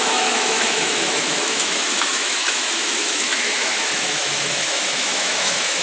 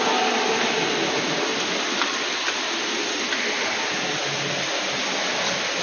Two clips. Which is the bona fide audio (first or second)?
second